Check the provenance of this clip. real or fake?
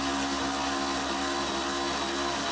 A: real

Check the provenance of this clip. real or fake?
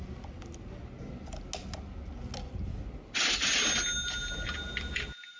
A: real